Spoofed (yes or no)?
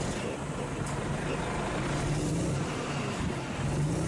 no